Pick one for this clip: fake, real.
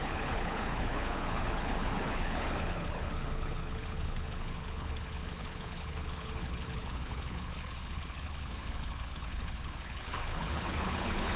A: fake